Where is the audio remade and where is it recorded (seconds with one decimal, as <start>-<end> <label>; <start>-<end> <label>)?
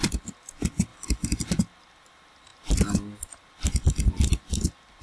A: 0.0-5.0 recorded